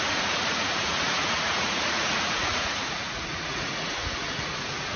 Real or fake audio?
fake